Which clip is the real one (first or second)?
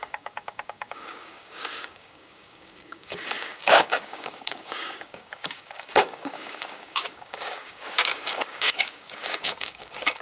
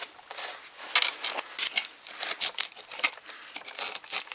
second